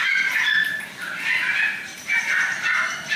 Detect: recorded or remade recorded